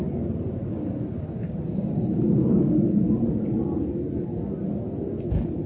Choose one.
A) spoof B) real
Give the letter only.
B